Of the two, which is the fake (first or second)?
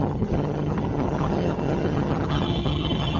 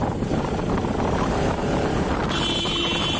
first